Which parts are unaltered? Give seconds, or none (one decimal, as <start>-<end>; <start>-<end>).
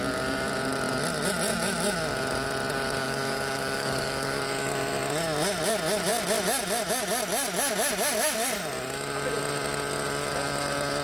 0.0-3.0; 4.4-11.0